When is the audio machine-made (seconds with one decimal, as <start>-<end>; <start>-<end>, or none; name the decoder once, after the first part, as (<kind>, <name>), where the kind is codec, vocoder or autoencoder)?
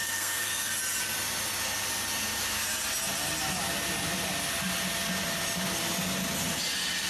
0.0-0.7 (codec, SNAC)